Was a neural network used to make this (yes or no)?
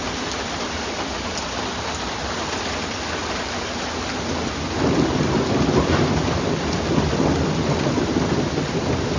no